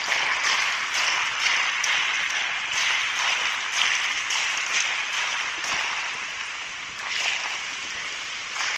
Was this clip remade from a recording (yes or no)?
no